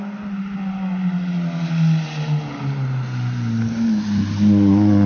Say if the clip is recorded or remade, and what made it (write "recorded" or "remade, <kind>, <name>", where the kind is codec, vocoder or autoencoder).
recorded